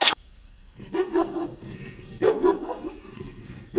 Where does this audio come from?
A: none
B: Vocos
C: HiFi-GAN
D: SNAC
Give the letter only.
D